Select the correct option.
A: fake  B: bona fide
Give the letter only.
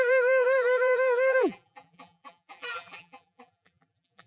A